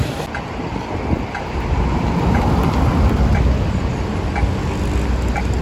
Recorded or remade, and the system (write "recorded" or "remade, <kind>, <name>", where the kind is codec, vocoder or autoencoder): recorded